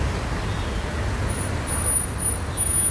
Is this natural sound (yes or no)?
yes